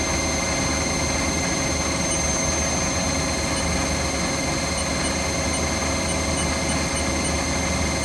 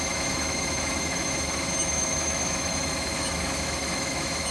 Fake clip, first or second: second